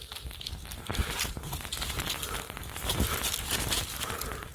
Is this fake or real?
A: real